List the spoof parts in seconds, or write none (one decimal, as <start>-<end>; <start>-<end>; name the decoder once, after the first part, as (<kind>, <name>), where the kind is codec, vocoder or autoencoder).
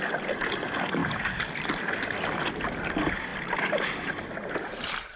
1.0-2.5 (vocoder, BigVGAN v2)